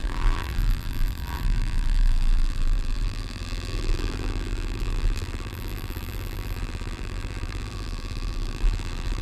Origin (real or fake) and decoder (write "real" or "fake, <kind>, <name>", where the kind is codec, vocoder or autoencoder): fake, vocoder, BigVGAN v2